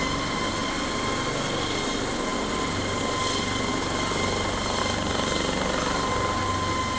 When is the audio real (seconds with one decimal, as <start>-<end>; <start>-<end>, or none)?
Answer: 0.0-7.0